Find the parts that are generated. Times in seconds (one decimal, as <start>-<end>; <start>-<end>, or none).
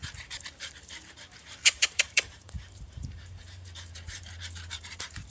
0.0-5.3